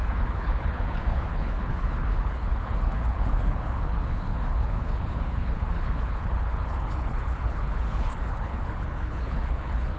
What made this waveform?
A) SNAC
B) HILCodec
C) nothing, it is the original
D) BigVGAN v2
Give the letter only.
B